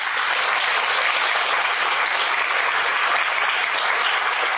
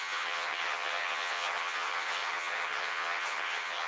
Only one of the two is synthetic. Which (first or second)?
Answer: second